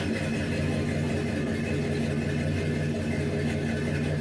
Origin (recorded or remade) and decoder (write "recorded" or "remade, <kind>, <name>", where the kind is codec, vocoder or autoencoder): recorded